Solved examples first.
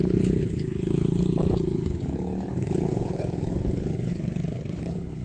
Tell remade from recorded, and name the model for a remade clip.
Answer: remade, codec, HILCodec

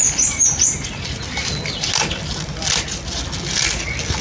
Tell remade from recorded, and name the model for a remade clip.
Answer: recorded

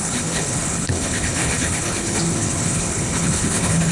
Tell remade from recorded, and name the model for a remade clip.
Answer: remade, codec, HILCodec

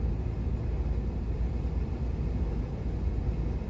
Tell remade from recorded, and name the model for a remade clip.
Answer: recorded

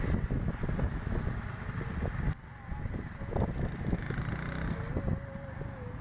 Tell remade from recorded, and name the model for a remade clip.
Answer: recorded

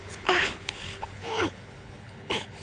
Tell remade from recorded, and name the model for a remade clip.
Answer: remade, codec, HILCodec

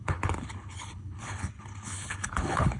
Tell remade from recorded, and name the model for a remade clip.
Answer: remade, codec, HILCodec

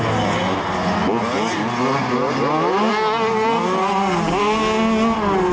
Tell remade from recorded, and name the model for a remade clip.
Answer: recorded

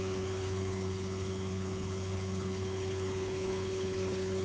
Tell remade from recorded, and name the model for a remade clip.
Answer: remade, codec, HILCodec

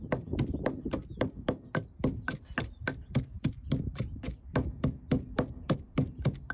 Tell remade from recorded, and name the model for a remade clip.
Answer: recorded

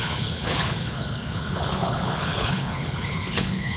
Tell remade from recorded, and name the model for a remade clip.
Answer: remade, codec, HILCodec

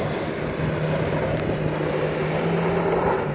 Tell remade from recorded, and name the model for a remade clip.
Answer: recorded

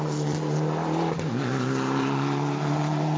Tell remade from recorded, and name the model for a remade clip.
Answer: recorded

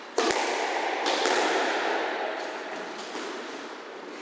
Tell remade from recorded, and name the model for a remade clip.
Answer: recorded